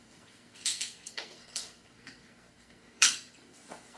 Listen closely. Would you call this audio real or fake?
fake